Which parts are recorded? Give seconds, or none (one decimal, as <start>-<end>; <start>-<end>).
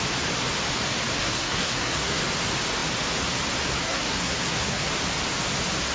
0.0-1.2; 2.2-3.8; 4.9-5.9